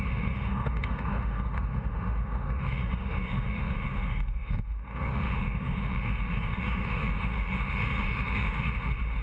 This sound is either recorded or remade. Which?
remade